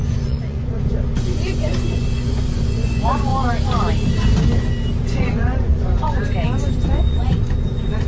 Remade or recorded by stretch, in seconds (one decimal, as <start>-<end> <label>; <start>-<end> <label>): 0.0-3.3 remade; 3.3-5.0 recorded; 5.0-6.2 remade; 6.2-6.9 recorded; 6.9-8.1 remade